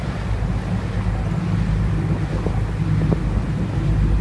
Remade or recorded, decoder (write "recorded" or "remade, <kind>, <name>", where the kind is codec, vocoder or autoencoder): recorded